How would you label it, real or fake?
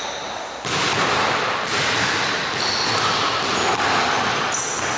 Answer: real